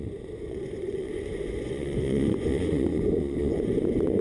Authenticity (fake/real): fake